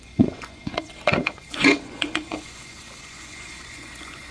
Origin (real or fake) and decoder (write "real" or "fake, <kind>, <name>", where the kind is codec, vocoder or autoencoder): fake, vocoder, Vocos